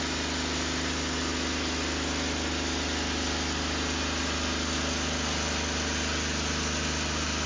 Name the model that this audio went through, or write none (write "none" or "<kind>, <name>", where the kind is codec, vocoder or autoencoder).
none